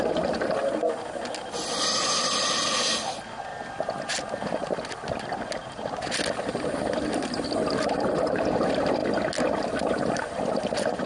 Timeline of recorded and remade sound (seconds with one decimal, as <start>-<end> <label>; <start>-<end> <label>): 0.0-11.1 recorded